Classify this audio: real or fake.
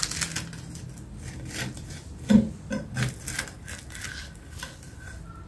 real